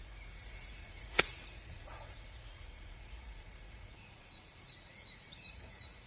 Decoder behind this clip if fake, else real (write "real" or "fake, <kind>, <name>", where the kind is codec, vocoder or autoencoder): fake, vocoder, Vocos